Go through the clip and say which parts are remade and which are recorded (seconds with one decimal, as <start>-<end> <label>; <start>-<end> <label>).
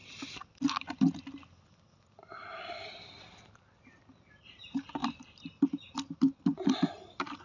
0.0-7.4 recorded